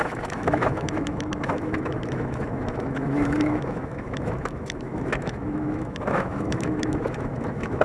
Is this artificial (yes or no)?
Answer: yes